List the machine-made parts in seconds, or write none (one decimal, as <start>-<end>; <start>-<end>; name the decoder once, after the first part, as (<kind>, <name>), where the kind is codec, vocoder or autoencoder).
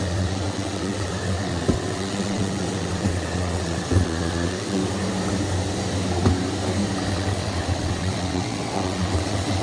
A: 0.0-4.8 (vocoder, WaveNeXt); 7.1-9.6